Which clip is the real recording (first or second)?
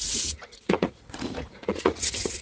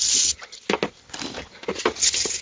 second